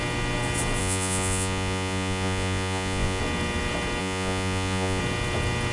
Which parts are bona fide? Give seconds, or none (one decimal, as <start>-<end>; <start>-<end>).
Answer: 0.0-0.8; 3.2-4.0; 5.0-5.7